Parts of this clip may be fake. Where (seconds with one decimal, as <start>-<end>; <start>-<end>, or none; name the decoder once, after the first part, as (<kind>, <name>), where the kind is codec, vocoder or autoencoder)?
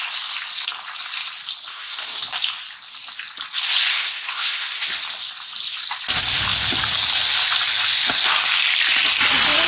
1.7-2.2 (codec, SNAC); 3.9-4.9